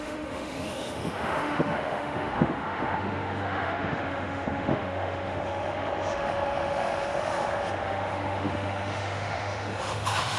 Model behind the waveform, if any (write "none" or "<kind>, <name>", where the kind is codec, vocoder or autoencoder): autoencoder, DAC-VAE